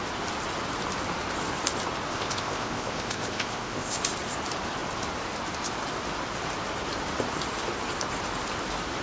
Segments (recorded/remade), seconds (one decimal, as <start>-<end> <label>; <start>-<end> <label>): 0.0-2.1 recorded; 2.1-4.0 remade; 4.0-9.0 recorded